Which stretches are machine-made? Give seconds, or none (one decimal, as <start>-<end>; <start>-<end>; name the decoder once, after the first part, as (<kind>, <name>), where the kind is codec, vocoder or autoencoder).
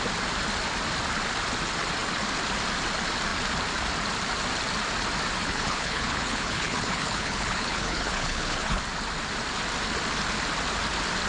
5.4-8.8 (codec, HILCodec)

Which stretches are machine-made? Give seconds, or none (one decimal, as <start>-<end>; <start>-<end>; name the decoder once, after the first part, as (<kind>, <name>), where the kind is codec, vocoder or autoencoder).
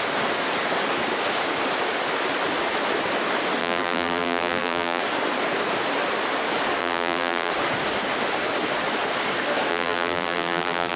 3.6-5.0 (vocoder, BigVGAN v2); 6.8-7.5; 9.7-11.0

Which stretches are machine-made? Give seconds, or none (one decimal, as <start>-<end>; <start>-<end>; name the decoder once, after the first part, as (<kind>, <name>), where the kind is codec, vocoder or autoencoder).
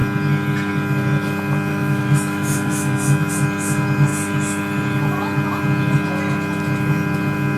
1.7-3.3 (autoencoder, DAC-VAE)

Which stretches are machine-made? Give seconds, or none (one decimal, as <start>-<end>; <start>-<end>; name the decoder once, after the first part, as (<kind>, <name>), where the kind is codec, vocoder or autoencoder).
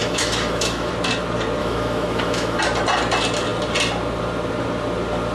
0.0-0.9 (autoencoder, DAC-VAE); 1.6-2.6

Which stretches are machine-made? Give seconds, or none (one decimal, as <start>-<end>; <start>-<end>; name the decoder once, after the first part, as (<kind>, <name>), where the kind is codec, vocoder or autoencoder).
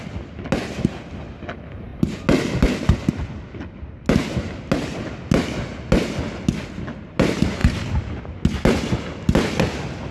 none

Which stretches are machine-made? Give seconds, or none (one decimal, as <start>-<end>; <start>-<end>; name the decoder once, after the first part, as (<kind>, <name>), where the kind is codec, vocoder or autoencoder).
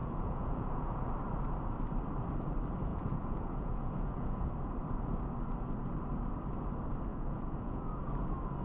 0.0-1.1 (vocoder, Vocos); 2.9-4.5; 7.1-8.0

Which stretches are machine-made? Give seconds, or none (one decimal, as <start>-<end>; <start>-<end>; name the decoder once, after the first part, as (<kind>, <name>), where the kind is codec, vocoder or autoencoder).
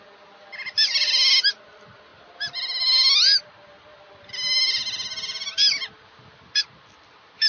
none